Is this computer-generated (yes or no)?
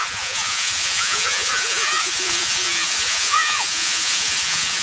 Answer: yes